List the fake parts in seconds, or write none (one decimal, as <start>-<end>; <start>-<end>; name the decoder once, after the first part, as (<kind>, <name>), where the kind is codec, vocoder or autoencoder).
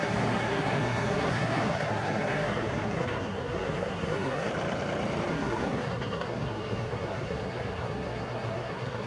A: 0.0-4.5 (codec, SNAC); 5.3-9.1